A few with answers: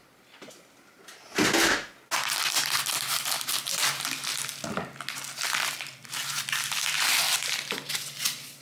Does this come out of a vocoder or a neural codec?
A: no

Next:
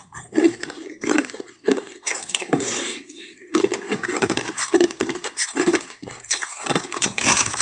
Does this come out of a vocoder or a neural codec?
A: yes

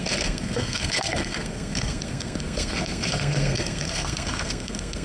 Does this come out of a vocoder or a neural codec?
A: yes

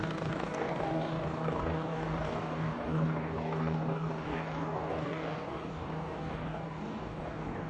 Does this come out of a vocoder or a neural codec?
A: yes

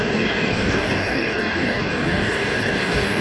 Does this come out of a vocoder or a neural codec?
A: yes